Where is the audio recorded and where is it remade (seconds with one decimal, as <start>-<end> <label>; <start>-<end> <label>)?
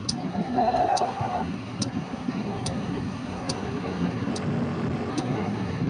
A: 0.0-4.3 remade; 4.3-5.1 recorded; 5.1-5.9 remade